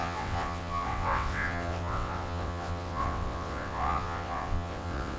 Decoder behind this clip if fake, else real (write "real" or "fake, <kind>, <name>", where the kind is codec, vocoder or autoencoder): fake, vocoder, WaveNeXt